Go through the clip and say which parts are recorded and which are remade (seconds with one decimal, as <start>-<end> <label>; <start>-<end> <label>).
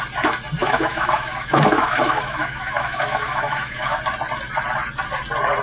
0.0-0.6 recorded; 0.6-4.0 remade; 4.0-5.6 recorded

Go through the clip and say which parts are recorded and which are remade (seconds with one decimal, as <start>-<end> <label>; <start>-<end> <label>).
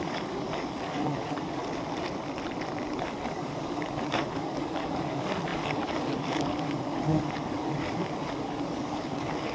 0.0-1.6 remade; 1.6-3.0 recorded; 3.0-9.5 remade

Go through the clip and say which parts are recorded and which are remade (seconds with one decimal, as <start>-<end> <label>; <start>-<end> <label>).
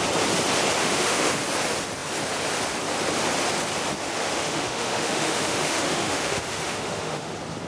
0.0-0.8 recorded; 0.8-1.4 remade; 1.4-4.3 recorded; 4.3-7.3 remade; 7.3-7.7 recorded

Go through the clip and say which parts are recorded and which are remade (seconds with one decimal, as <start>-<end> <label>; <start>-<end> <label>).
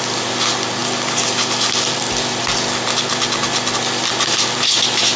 0.0-5.2 recorded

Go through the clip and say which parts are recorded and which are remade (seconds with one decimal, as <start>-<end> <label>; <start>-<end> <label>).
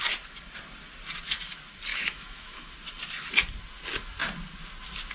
0.0-1.9 recorded; 1.9-2.7 remade; 2.7-5.1 recorded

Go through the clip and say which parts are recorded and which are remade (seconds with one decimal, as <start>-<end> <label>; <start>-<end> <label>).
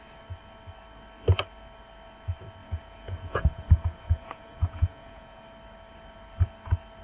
0.0-2.6 recorded; 2.6-5.4 remade; 5.4-7.0 recorded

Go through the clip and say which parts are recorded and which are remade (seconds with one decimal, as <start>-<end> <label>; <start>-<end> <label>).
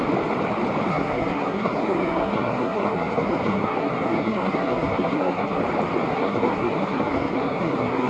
0.0-0.9 recorded; 0.9-5.6 remade; 5.6-6.1 recorded; 6.1-8.1 remade